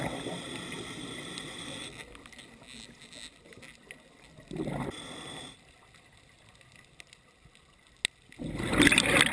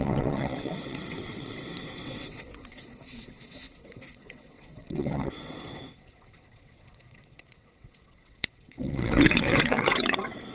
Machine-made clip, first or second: second